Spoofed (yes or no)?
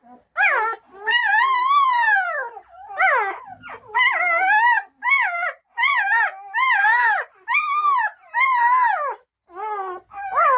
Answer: no